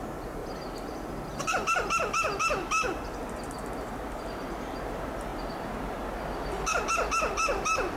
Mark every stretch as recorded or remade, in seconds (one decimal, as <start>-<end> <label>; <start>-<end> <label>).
0.0-1.3 recorded; 1.3-3.5 remade; 3.5-8.0 recorded